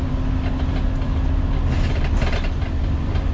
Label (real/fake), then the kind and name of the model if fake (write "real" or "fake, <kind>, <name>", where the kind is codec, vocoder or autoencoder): real